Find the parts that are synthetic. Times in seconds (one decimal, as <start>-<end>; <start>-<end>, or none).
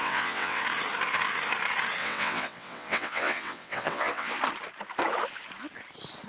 0.0-0.6; 2.0-4.4